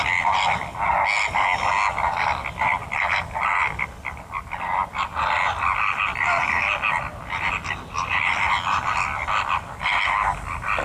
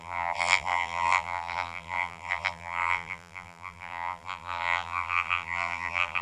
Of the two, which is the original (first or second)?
first